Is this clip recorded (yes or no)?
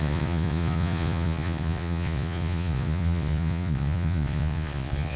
no